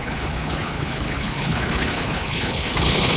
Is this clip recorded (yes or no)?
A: no